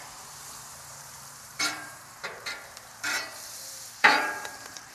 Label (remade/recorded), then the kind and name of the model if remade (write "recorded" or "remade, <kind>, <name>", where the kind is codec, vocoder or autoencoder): remade, vocoder, BigVGAN v2